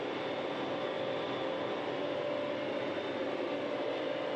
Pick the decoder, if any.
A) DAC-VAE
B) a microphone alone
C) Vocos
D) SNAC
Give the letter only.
B